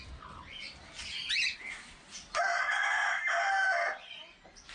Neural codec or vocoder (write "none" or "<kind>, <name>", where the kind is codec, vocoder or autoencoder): none